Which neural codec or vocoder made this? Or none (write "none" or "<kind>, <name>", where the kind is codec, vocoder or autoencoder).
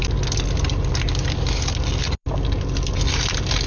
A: none